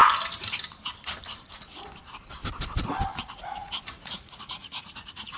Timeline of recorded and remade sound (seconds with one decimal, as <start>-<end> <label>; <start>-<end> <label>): 0.0-3.2 recorded; 3.2-5.4 remade